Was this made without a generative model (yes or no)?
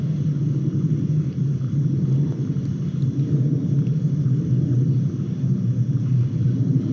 no